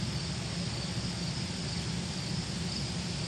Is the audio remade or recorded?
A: recorded